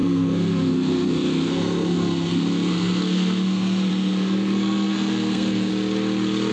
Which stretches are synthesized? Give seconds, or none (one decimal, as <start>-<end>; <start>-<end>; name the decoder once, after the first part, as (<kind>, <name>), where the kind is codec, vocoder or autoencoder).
0.0-5.7 (codec, SNAC)